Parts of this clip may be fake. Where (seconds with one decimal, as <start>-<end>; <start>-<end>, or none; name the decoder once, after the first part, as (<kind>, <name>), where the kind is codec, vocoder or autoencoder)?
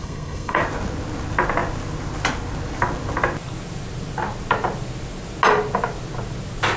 0.0-0.6 (codec, SNAC)